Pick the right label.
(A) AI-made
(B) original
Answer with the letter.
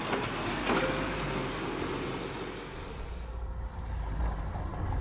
B